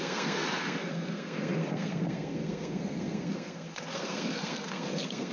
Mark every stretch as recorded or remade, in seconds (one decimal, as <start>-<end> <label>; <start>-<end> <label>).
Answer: 0.0-5.3 remade